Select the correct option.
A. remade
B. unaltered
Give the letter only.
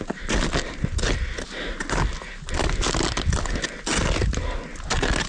B